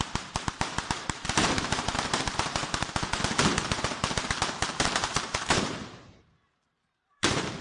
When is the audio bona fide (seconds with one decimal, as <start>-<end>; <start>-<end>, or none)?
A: 2.6-4.0